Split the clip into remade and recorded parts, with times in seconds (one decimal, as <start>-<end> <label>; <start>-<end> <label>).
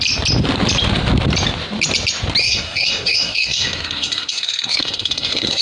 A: 0.0-2.4 recorded; 2.4-5.6 remade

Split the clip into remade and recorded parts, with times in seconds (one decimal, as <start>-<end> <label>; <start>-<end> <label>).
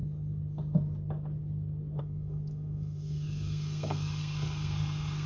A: 0.0-2.0 recorded; 2.0-5.3 remade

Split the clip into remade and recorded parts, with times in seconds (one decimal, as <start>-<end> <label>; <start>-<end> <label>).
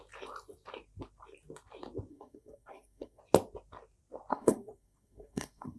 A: 0.0-2.1 recorded; 2.1-3.2 remade; 3.2-4.3 recorded; 4.3-5.8 remade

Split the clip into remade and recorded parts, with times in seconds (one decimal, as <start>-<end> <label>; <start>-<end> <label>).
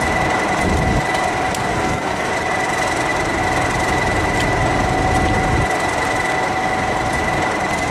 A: 0.0-1.7 recorded; 1.7-2.3 remade; 2.3-7.9 recorded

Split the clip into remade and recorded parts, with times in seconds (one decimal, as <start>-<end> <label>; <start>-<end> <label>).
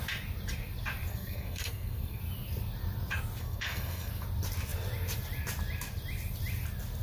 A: 0.0-1.1 recorded; 1.1-2.2 remade; 2.2-3.4 recorded; 3.4-4.1 remade; 4.1-7.0 recorded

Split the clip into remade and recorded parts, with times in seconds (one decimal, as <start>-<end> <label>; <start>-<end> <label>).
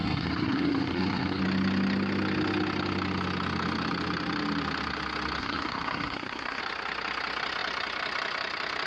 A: 0.0-1.4 remade; 1.4-5.4 recorded; 5.4-6.6 remade; 6.6-8.9 recorded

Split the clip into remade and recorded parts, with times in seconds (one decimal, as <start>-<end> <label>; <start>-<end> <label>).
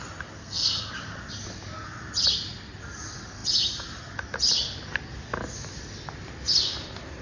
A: 0.0-0.4 recorded; 0.4-0.9 remade; 0.9-7.2 recorded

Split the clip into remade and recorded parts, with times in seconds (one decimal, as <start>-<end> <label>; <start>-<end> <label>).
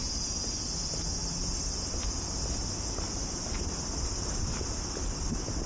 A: 0.0-5.7 recorded